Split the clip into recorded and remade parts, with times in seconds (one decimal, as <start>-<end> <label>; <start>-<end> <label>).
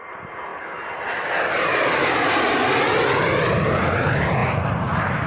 0.0-5.3 recorded